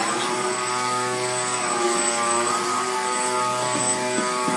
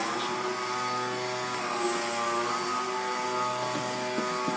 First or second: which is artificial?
first